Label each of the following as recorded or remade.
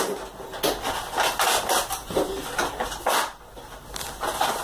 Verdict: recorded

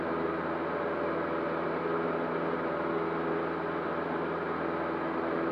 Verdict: recorded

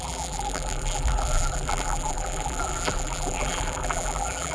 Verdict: remade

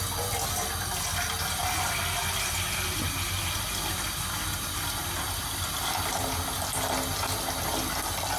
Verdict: recorded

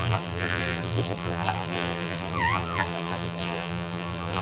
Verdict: remade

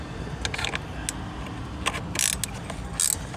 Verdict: recorded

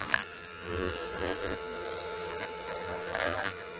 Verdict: remade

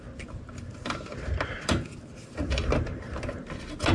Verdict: recorded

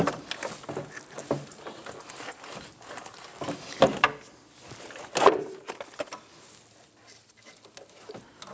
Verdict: recorded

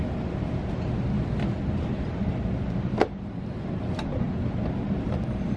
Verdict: recorded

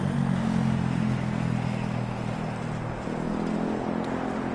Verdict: recorded